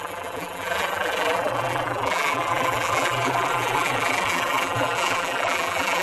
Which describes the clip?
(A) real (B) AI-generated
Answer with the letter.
B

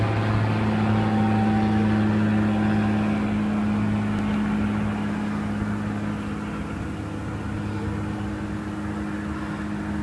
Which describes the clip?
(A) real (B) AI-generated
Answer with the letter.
A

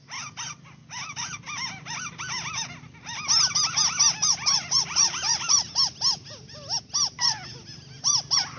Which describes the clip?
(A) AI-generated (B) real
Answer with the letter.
B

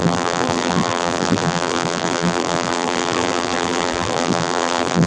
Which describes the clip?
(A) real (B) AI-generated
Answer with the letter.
B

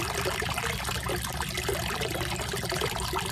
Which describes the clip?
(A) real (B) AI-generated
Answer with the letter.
A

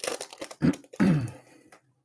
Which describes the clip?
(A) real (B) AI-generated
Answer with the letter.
B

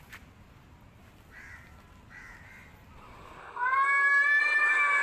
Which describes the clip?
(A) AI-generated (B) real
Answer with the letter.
B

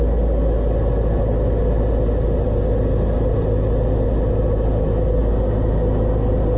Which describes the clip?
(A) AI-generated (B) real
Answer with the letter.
B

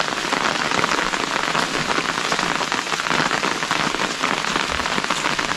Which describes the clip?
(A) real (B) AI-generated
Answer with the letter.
A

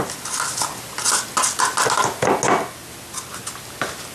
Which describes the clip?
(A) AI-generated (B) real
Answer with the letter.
B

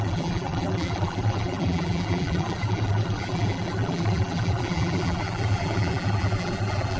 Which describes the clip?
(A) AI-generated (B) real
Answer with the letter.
A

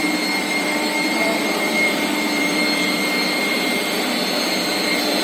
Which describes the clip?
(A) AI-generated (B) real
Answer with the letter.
A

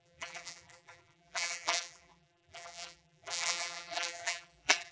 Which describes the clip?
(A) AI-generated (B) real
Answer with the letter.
A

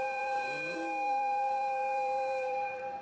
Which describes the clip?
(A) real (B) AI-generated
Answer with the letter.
B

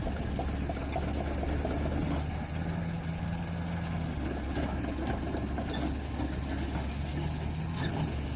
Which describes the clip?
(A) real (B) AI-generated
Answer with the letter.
A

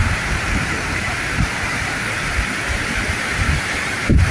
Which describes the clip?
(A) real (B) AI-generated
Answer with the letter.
B